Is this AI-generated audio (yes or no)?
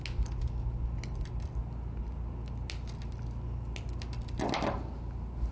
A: no